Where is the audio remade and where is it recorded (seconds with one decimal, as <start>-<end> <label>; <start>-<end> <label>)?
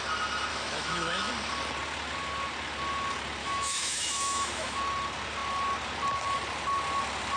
0.0-0.5 recorded; 0.5-1.3 remade; 1.3-3.4 recorded; 3.4-4.8 remade; 4.8-7.4 recorded